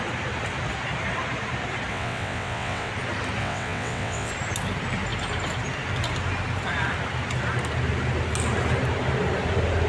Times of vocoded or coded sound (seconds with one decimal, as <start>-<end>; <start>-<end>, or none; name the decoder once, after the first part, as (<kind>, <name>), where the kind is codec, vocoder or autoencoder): 1.9-2.9 (vocoder, WaveNeXt); 3.4-4.3